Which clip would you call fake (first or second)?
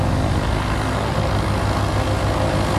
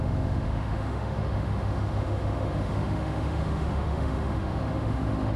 second